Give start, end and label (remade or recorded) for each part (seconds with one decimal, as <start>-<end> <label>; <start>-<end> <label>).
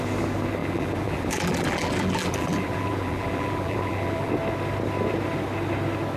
0.0-0.6 recorded; 0.6-4.3 remade; 4.3-6.2 recorded